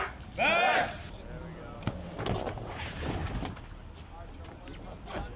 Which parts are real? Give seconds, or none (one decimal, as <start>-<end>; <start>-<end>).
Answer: 0.0-5.4